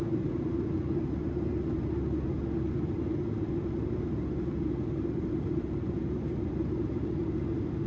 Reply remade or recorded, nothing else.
recorded